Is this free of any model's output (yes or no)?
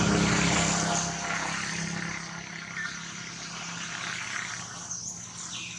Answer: yes